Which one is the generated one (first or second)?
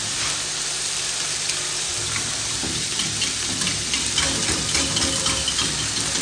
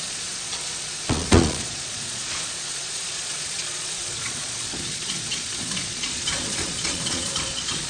second